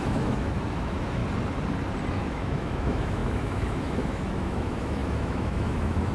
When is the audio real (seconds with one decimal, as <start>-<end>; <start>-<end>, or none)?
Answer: 1.2-2.1